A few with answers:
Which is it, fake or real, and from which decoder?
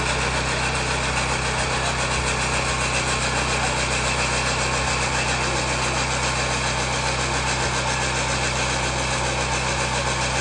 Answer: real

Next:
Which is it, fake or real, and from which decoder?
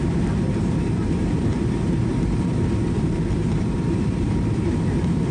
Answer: fake, vocoder, BigVGAN v2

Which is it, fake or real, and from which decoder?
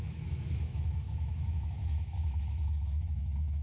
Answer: fake, autoencoder, DAC-VAE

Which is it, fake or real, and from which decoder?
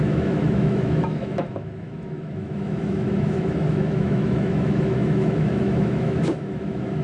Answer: fake, autoencoder, DAC-VAE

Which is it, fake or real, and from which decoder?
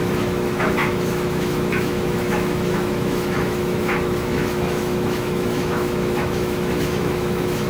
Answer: fake, autoencoder, DAC-VAE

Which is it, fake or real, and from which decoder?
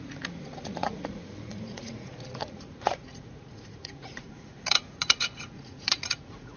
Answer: fake, vocoder, Vocos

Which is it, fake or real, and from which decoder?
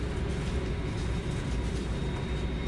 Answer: real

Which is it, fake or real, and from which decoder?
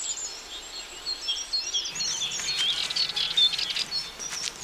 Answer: real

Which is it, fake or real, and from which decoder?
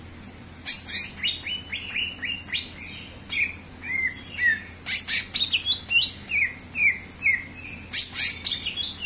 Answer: real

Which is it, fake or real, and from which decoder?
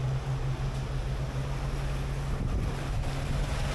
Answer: real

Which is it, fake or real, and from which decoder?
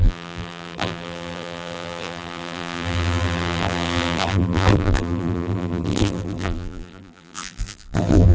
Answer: fake, vocoder, BigVGAN v2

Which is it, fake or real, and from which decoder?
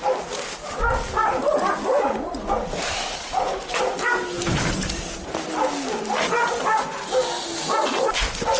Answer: real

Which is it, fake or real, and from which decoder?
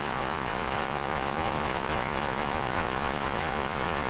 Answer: fake, vocoder, Vocos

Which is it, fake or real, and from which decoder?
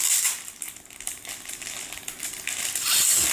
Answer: real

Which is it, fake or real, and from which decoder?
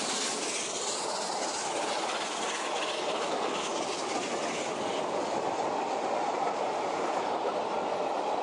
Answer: real